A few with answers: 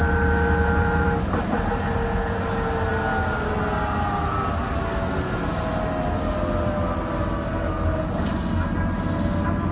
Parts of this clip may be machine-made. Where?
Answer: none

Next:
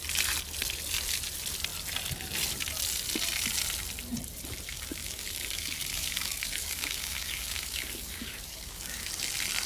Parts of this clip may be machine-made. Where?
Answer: 4.7-9.1 (codec, DAC)

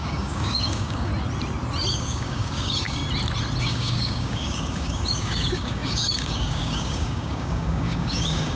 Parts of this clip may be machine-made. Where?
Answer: 0.0-1.1 (codec, DAC); 1.9-3.0; 3.6-8.6

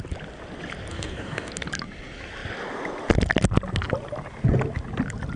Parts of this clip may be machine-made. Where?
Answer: 0.9-1.5 (codec, DAC)

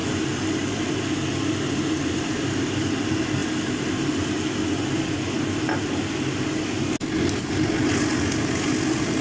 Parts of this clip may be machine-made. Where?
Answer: none

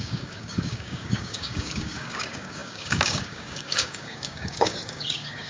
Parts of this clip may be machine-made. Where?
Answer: 0.0-5.5 (codec, DAC)